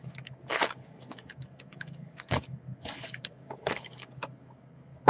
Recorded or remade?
remade